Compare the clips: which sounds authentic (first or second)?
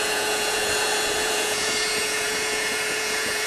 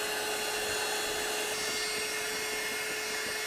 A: second